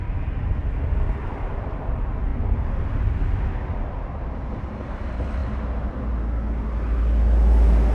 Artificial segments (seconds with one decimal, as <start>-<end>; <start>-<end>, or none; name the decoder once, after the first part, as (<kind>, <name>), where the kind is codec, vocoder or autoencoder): 0.6-1.6 (vocoder, BigVGAN v2)